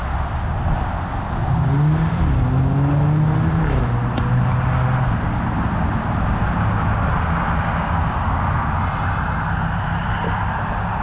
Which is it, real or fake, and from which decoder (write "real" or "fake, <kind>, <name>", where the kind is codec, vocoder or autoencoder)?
real